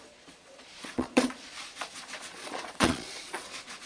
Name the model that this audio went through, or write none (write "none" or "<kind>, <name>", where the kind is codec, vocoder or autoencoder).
vocoder, Vocos